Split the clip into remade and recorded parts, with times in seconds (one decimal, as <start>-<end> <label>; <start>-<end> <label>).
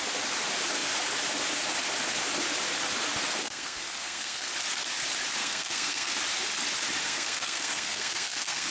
0.0-3.4 recorded; 3.4-4.5 remade; 4.5-5.4 recorded; 5.4-6.1 remade; 6.1-7.0 recorded; 7.0-8.7 remade